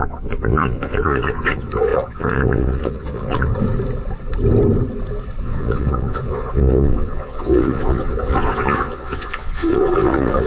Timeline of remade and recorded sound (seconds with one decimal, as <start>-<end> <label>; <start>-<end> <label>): 0.0-3.5 remade; 3.5-5.4 recorded; 5.4-10.5 remade